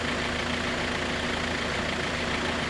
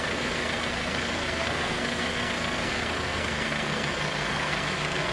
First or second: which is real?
first